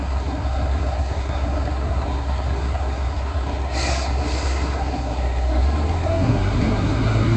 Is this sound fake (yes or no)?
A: yes